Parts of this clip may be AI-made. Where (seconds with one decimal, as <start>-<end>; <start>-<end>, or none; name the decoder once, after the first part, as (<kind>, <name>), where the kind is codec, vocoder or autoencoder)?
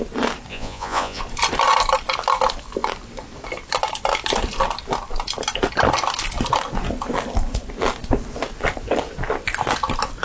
0.5-1.2 (vocoder, Vocos)